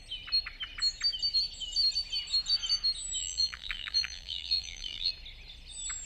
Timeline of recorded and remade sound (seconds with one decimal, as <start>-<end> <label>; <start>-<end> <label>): 0.0-3.2 recorded; 3.2-5.1 remade; 5.1-6.1 recorded